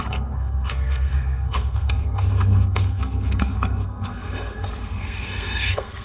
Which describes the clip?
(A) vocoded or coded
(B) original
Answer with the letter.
A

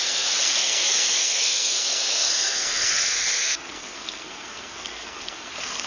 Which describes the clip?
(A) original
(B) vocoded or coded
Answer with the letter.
B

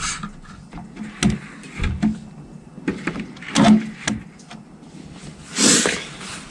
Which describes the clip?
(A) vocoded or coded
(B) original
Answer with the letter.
B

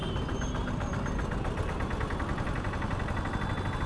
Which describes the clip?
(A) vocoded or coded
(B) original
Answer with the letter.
B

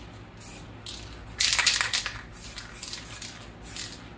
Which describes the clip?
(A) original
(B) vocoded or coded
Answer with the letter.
A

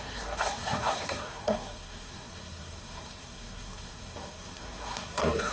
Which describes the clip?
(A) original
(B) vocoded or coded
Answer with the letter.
B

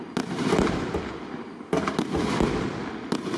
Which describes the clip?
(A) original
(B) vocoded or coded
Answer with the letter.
A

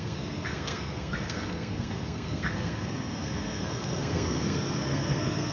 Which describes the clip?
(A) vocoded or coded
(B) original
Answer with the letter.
A